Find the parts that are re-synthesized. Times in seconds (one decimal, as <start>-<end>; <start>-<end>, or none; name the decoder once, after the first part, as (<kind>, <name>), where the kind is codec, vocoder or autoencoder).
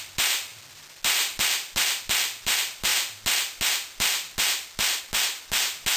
none